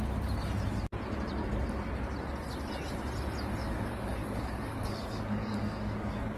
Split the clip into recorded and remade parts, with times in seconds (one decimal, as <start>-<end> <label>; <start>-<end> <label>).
0.0-3.6 recorded; 3.6-6.4 remade